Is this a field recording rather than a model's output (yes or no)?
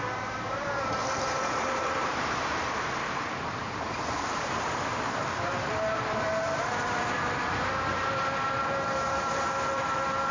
no